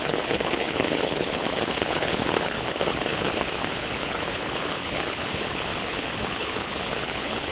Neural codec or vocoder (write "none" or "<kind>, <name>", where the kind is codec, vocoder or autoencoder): codec, HILCodec